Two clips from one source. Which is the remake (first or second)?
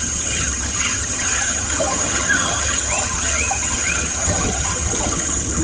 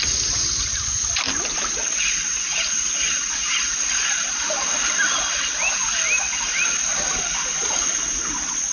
first